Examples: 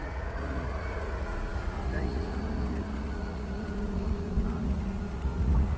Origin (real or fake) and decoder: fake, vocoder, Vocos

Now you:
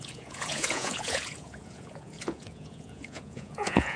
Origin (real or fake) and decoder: fake, vocoder, Vocos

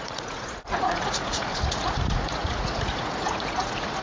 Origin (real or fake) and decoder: fake, vocoder, Vocos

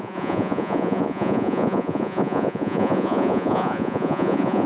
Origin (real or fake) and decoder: fake, vocoder, Vocos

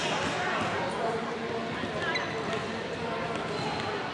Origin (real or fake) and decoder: real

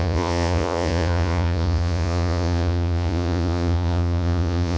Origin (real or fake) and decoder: fake, vocoder, Vocos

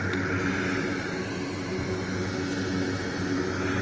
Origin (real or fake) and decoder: real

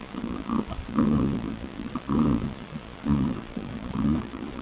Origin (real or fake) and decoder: fake, vocoder, Vocos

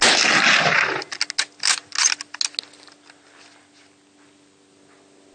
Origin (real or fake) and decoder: real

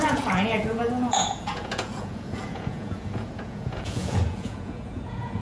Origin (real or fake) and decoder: fake, vocoder, Vocos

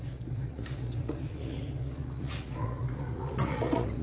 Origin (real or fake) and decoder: fake, vocoder, Vocos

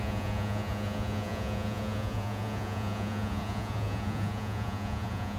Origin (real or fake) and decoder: fake, vocoder, Vocos